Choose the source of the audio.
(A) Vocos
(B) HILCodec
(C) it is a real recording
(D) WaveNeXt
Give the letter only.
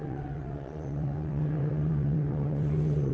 D